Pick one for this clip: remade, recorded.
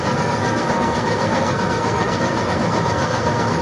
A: remade